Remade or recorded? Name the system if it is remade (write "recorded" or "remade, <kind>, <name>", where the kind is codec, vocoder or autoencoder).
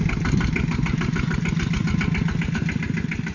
recorded